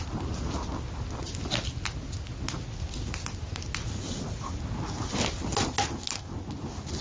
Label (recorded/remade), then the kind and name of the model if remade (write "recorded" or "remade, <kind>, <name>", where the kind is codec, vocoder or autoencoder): recorded